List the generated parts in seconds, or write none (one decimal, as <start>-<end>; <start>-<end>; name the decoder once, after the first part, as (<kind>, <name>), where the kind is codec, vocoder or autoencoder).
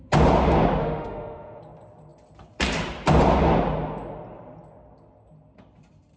0.8-1.6 (autoencoder, DAC-VAE)